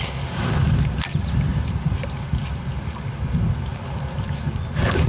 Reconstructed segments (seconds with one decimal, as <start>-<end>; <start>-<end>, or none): 1.5-4.6